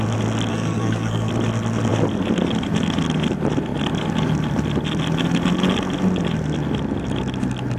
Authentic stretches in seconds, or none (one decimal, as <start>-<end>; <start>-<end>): 0.0-0.5; 1.3-7.8